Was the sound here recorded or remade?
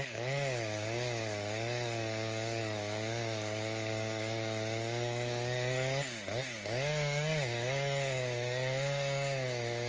remade